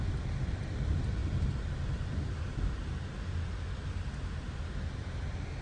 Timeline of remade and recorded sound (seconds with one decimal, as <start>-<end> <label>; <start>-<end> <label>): 0.0-5.6 recorded